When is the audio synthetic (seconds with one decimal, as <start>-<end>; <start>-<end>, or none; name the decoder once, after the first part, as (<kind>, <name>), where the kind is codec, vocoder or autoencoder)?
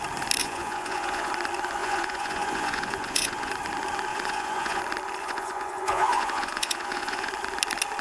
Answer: 0.4-1.3 (vocoder, Vocos); 1.8-3.5; 4.1-4.8; 5.2-7.3